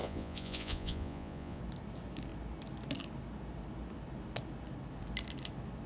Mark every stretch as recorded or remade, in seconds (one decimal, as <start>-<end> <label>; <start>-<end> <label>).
0.0-1.6 remade; 1.6-5.9 recorded